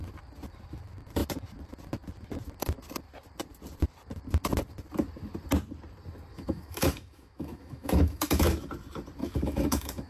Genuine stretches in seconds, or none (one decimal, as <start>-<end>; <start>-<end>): 0.0-6.3; 8.7-9.2